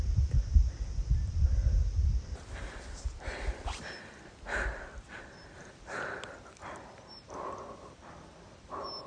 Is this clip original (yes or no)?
no